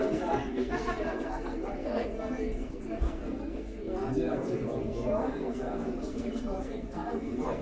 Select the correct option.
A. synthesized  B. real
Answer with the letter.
A